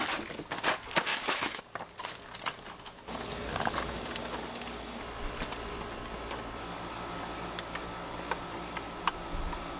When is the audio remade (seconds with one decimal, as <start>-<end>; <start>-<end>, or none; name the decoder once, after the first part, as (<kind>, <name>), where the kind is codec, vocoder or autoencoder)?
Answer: 1.1-1.6 (autoencoder, DAC-VAE)